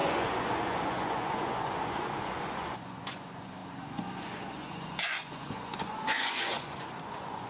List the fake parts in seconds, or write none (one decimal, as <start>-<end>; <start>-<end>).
0.0-7.5